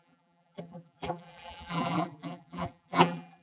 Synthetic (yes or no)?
yes